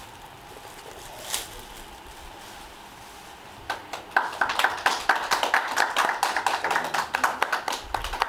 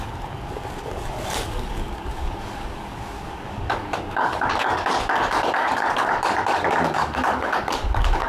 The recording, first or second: first